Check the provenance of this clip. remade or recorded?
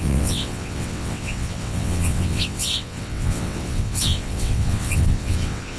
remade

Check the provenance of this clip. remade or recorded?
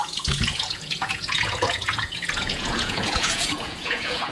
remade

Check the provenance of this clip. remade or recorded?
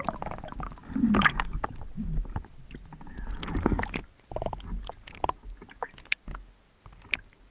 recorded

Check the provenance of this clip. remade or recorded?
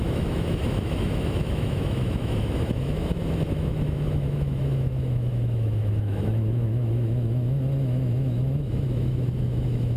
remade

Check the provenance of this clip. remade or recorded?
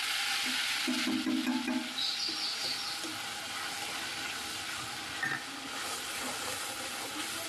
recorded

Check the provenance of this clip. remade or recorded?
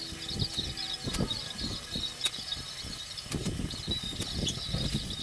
recorded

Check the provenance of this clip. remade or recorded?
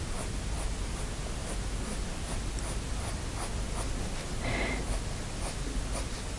recorded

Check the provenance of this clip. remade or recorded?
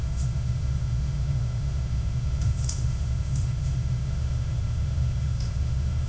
remade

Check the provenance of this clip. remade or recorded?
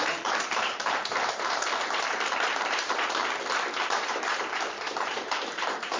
remade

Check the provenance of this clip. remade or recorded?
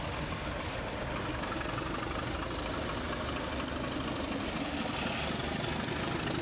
recorded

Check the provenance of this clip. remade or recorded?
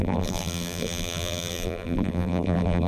remade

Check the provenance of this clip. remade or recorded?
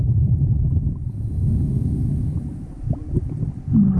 remade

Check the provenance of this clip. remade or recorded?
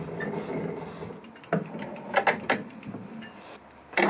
recorded